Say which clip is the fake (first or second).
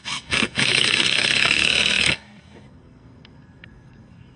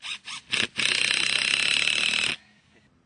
first